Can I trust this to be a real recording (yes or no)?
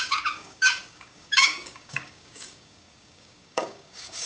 no